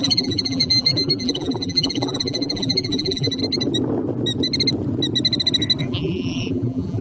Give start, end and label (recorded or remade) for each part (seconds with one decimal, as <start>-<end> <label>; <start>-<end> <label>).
0.0-3.4 remade; 3.4-5.8 recorded; 5.8-7.0 remade